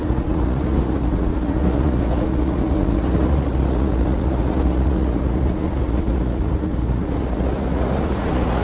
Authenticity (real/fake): fake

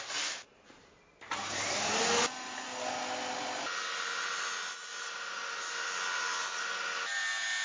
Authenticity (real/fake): real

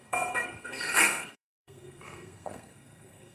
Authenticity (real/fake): fake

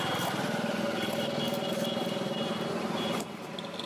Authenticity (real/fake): fake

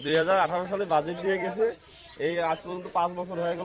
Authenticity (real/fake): fake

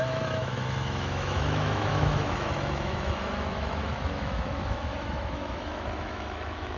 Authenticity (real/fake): fake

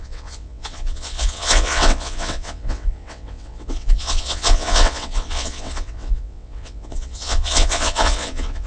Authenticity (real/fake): fake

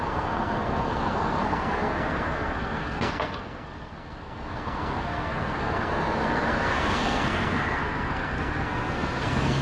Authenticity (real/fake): fake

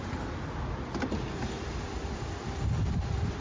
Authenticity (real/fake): real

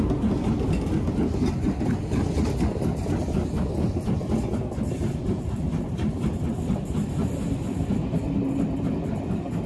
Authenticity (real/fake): real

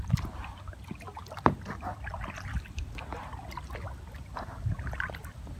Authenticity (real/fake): real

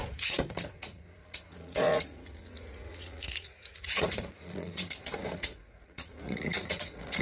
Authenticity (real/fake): fake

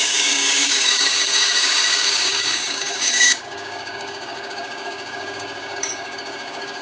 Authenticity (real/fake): fake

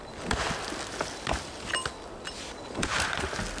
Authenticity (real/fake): real